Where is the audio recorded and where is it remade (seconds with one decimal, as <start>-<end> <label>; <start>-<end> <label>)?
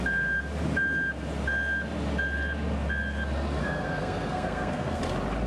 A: 0.0-3.6 recorded; 3.6-5.0 remade; 5.0-5.5 recorded